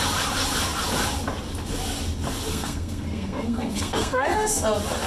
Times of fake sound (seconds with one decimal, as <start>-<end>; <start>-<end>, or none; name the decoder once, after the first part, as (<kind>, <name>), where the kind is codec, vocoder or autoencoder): 2.5-4.6 (codec, SNAC)